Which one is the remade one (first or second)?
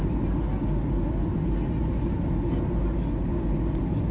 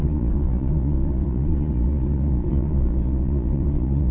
second